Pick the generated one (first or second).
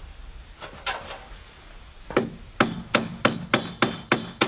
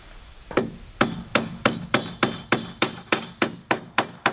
second